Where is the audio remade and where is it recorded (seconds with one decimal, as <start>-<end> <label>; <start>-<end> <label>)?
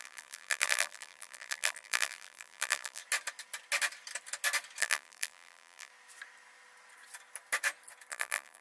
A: 0.0-3.0 remade; 3.0-4.8 recorded; 4.8-5.9 remade; 5.9-8.1 recorded; 8.1-8.6 remade